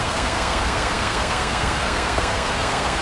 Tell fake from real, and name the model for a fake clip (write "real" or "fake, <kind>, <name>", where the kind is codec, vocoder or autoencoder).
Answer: fake, codec, SNAC